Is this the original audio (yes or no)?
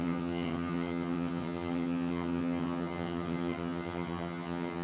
no